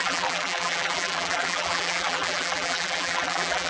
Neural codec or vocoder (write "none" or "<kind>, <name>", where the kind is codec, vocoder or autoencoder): vocoder, BigVGAN v2